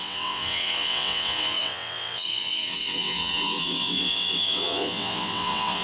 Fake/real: fake